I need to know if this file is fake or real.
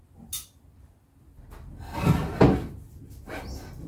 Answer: real